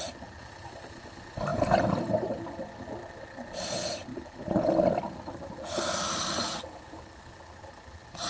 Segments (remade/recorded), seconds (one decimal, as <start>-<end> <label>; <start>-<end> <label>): 0.0-8.3 recorded